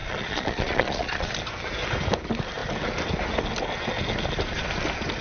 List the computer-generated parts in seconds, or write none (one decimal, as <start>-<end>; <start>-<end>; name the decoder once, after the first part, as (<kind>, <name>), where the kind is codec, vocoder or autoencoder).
0.0-1.3 (vocoder, Vocos)